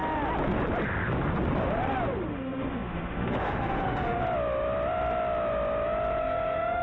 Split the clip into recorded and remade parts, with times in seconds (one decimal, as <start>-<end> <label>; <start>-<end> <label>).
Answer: 0.0-2.2 recorded; 2.2-4.2 remade; 4.2-6.2 recorded; 6.2-6.8 remade